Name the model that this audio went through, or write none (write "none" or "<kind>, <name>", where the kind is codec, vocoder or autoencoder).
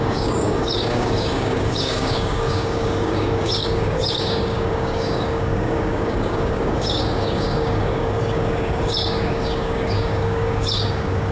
codec, DAC